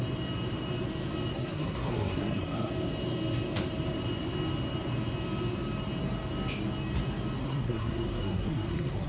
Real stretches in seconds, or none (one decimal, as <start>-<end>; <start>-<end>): 0.0-1.3; 2.7-7.4